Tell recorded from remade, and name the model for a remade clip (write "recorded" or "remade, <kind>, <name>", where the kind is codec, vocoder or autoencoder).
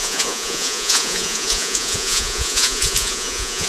remade, vocoder, Vocos